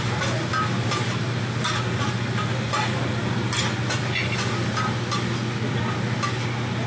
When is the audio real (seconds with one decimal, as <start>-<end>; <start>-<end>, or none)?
0.0-6.9